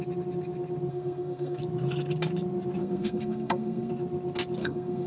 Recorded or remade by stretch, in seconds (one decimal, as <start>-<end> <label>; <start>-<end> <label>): 0.0-0.9 recorded; 0.9-1.6 remade; 1.6-2.8 recorded; 2.8-3.9 remade; 3.9-4.6 recorded; 4.6-5.1 remade